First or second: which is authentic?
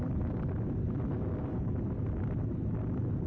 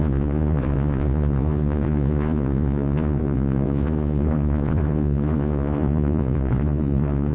first